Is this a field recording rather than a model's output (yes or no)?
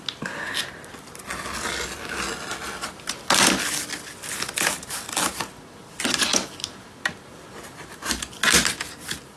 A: yes